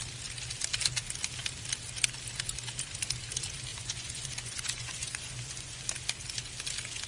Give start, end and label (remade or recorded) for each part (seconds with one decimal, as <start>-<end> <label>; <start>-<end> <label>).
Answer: 0.0-3.7 recorded; 3.7-5.8 remade; 5.8-7.1 recorded